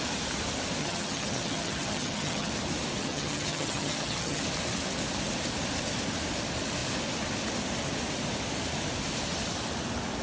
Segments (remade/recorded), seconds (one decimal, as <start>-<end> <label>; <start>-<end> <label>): 0.0-0.8 recorded; 0.8-2.5 remade; 2.5-3.0 recorded; 3.0-4.4 remade; 4.4-10.2 recorded